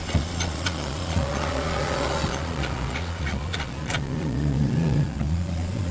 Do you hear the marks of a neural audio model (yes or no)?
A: yes